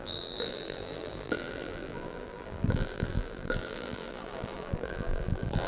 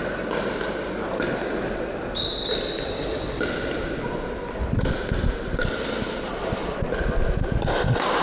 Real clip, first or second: second